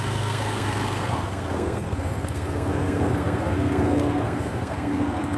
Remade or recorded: remade